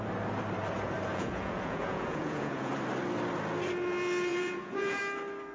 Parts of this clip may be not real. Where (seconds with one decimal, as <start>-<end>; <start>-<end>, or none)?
1.1-2.7; 4.3-5.0